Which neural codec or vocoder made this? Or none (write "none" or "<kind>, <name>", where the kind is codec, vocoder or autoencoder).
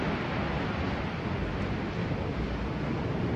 none